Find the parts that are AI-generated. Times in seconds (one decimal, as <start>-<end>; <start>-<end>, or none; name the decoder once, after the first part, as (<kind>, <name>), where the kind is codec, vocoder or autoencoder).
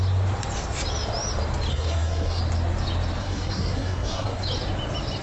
1.7-2.4 (codec, SNAC); 3.2-4.4